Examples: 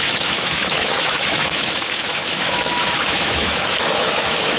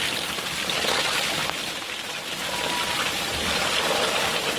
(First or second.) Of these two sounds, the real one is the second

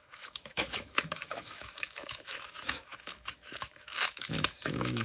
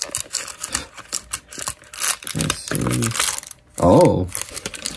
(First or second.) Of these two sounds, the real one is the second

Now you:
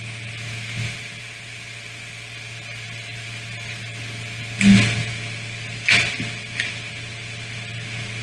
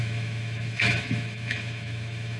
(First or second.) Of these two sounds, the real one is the first